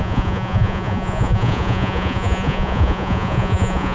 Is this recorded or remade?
remade